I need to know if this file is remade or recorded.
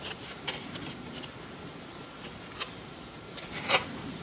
recorded